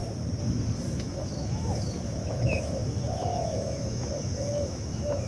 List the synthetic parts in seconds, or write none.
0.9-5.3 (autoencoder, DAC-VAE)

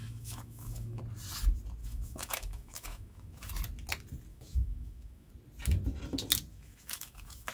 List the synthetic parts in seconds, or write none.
0.0-1.0 (autoencoder, DAC-VAE); 1.8-3.5; 4.3-5.3; 6.5-7.5